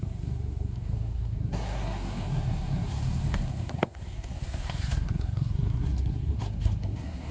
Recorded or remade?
remade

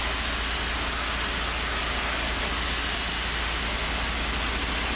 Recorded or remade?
recorded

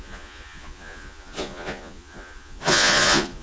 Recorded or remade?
remade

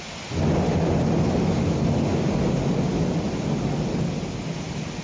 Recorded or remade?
recorded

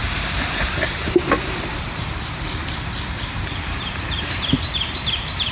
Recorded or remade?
remade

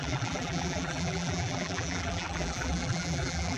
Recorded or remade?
remade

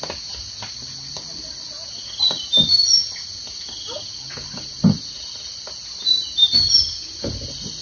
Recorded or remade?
recorded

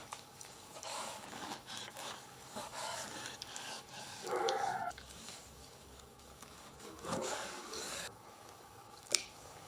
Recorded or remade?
remade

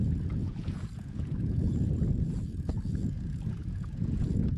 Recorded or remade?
remade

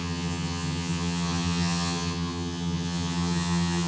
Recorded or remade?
remade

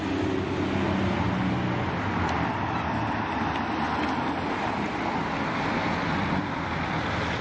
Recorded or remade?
recorded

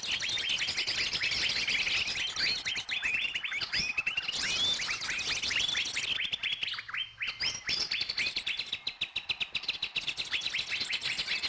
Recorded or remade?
recorded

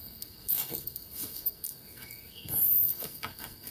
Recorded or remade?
remade